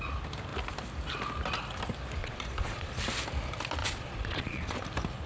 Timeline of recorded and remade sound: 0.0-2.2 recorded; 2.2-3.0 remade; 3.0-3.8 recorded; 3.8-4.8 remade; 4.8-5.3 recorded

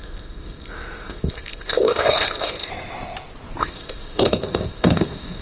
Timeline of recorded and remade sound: 0.0-2.7 remade; 2.7-3.6 recorded; 3.6-5.4 remade

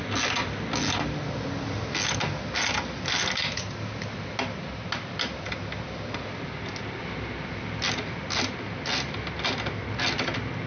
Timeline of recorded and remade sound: 0.0-10.7 recorded

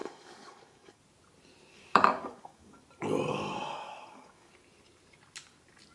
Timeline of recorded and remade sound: 0.0-1.0 remade; 1.0-1.7 recorded; 1.7-2.8 remade; 2.8-3.3 recorded; 3.3-4.5 remade; 4.5-5.9 recorded

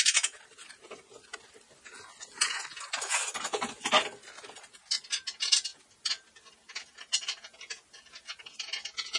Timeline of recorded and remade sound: 0.0-9.2 recorded